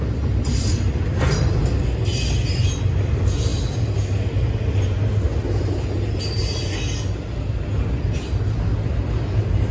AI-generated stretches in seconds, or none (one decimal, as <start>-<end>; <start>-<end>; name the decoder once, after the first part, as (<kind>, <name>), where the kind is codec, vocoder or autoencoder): none